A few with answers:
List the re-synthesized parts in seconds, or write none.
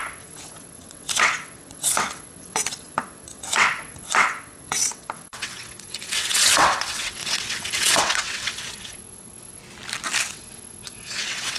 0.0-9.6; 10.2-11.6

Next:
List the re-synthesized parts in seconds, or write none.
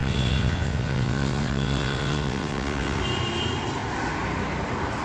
0.0-3.0